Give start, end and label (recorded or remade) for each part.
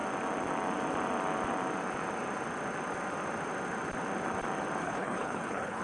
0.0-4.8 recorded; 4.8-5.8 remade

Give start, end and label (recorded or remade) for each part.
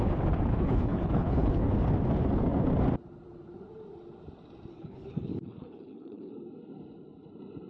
0.0-0.5 recorded; 0.5-1.7 remade; 1.7-4.7 recorded; 4.7-6.3 remade; 6.3-7.7 recorded